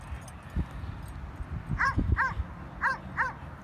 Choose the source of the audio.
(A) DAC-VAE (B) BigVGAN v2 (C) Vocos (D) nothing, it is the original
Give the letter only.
D